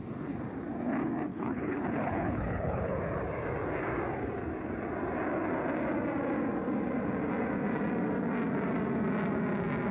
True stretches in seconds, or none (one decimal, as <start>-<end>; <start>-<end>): 0.0-1.3; 2.9-9.9